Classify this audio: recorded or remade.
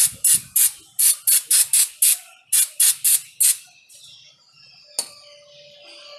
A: recorded